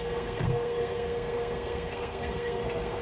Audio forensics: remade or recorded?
remade